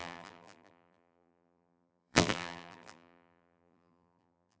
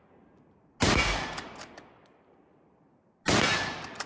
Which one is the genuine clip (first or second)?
second